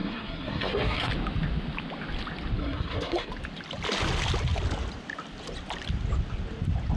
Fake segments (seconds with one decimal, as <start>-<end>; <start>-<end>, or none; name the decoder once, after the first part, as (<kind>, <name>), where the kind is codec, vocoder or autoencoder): 0.0-1.1 (codec, SNAC); 2.6-3.3